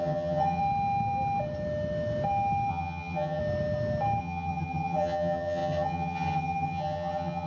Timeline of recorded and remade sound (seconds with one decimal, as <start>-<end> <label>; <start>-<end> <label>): 0.0-0.6 remade; 0.6-2.7 recorded; 2.7-3.4 remade; 3.4-4.2 recorded; 4.2-7.5 remade